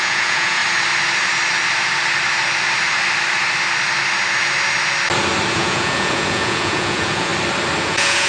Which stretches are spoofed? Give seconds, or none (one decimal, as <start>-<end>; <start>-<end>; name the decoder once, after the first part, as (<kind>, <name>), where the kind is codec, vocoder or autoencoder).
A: 0.0-0.6 (vocoder, Vocos); 5.5-7.3; 7.8-8.3